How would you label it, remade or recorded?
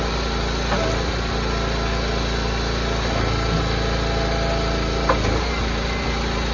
recorded